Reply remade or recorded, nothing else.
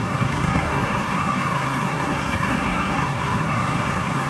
remade